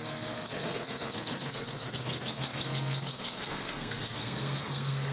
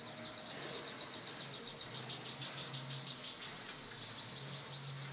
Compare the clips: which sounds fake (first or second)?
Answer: first